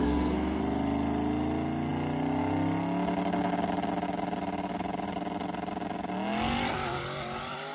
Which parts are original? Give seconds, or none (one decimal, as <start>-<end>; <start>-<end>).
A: 0.6-7.7

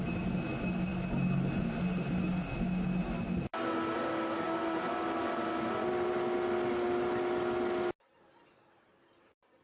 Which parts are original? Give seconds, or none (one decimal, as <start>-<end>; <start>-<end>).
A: 0.0-9.6

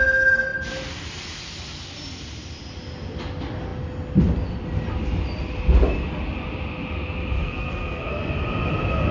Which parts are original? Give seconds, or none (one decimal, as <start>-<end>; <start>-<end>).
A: 0.0-7.4; 8.3-9.1

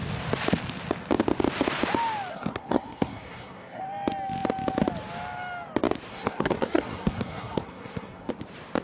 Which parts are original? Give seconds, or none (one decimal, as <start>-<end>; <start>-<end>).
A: 0.0-2.3; 3.8-6.1; 8.3-8.8

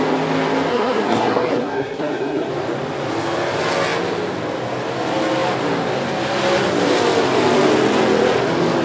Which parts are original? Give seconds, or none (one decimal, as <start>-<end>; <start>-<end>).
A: 0.0-0.7; 2.5-8.8

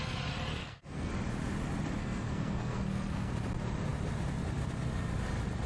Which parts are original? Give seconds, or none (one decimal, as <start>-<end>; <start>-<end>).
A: 0.0-0.6; 1.1-2.0; 3.3-5.7

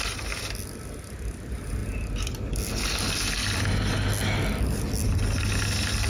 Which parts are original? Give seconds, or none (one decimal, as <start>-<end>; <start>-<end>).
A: 0.0-6.1